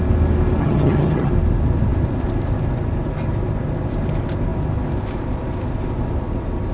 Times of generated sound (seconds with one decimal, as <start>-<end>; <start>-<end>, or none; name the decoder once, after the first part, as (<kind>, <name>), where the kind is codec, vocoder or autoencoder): 0.6-1.3 (vocoder, HiFi-GAN)